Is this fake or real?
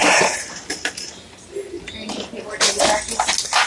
real